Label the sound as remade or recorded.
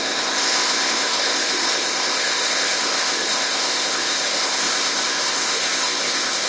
remade